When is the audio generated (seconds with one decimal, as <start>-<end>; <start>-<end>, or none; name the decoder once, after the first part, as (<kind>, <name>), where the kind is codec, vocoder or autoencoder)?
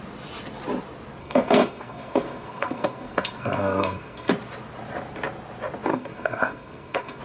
1.2-4.3 (codec, SNAC); 5.9-7.2